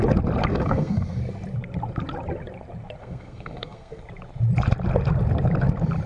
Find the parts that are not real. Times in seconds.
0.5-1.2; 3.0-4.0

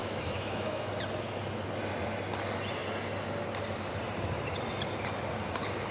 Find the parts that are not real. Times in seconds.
0.0-0.9

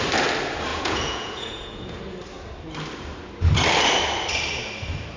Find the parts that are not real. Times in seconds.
0.7-2.0

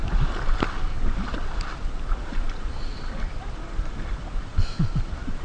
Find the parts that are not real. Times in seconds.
2.9-4.0